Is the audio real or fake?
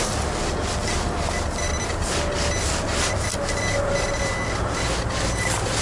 real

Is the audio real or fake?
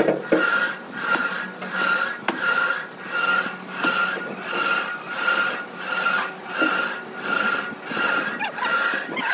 real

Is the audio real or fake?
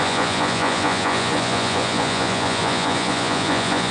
fake